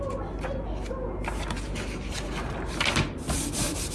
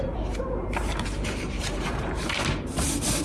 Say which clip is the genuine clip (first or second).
first